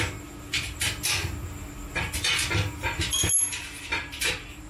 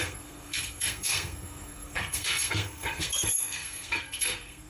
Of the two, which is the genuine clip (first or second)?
first